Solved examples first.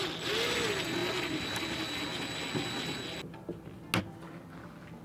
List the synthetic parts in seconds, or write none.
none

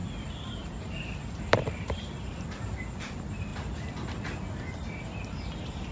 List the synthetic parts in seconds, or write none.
1.4-3.5; 5.2-5.9

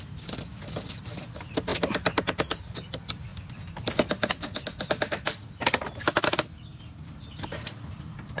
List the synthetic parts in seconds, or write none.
1.7-2.9; 6.7-7.7

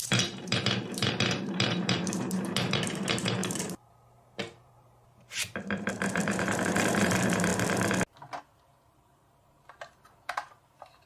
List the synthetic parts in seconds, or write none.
0.0-7.5; 8.4-11.1

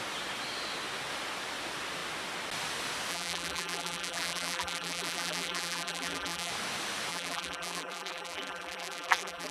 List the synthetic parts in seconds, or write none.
3.1-6.5; 7.1-9.5